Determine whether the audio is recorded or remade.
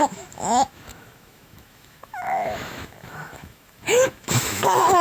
remade